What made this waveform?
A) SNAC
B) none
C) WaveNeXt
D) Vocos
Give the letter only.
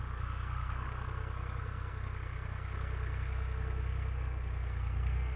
A